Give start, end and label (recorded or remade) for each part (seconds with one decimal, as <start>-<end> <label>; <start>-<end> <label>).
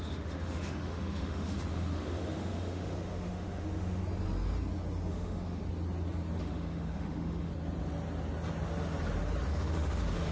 0.0-4.0 remade; 4.0-5.1 recorded; 5.1-5.6 remade; 5.6-6.4 recorded; 6.4-7.5 remade; 7.5-9.5 recorded; 9.5-10.3 remade